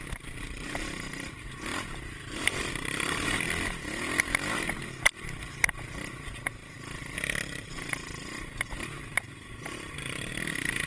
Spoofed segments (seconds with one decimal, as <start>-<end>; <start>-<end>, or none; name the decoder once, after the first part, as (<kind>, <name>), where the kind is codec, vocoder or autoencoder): 1.7-3.4 (vocoder, BigVGAN v2); 6.6-8.2; 9.1-10.3